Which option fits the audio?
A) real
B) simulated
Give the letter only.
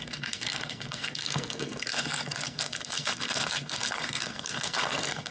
B